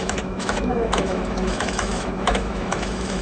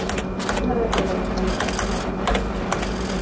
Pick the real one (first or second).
second